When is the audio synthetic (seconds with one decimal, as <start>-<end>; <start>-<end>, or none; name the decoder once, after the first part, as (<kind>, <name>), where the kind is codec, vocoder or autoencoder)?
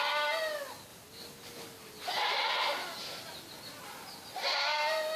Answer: none